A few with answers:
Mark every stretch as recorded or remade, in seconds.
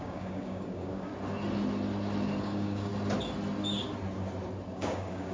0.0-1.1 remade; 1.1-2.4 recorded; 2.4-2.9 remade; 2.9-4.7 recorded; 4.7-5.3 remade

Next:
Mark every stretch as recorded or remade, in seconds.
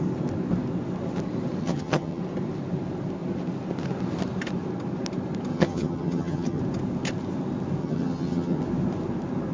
0.0-1.6 recorded; 1.6-2.2 remade; 2.2-5.5 recorded; 5.5-6.6 remade; 6.6-7.8 recorded; 7.8-8.6 remade; 8.6-9.5 recorded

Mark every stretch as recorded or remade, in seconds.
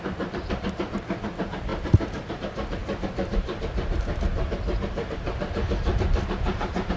0.0-7.0 remade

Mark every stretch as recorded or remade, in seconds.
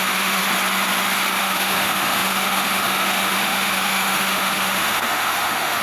0.0-0.5 remade; 0.5-1.4 recorded; 1.4-5.8 remade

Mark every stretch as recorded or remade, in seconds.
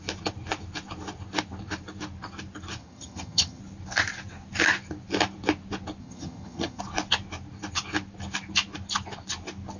0.0-2.8 recorded; 2.8-3.6 remade; 3.6-6.0 recorded; 6.0-6.8 remade; 6.8-9.8 recorded